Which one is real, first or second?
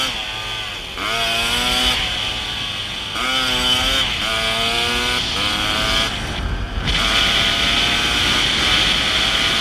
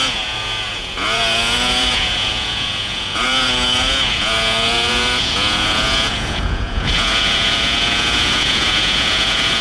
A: first